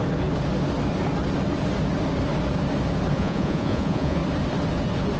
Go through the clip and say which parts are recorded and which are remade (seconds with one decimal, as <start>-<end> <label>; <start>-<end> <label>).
0.0-3.1 recorded; 3.1-4.2 remade; 4.2-5.2 recorded